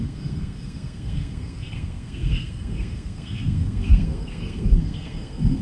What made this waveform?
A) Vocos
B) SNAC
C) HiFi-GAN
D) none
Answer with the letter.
B